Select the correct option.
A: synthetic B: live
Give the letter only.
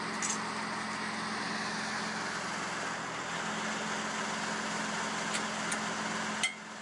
B